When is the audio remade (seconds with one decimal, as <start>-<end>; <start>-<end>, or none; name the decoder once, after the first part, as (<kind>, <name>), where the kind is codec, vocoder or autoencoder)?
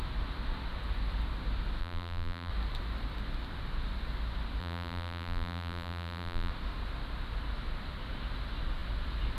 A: 1.8-2.5 (vocoder, BigVGAN v2); 4.6-6.5